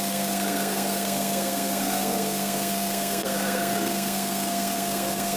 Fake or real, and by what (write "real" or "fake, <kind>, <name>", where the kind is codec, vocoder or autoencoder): fake, codec, SNAC